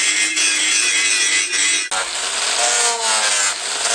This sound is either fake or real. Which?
real